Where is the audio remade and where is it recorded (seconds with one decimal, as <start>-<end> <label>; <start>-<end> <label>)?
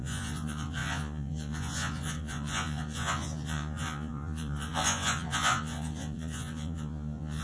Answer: 0.0-7.4 remade